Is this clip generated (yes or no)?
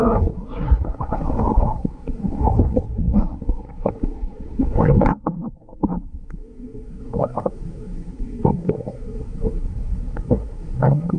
yes